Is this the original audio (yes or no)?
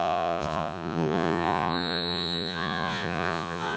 no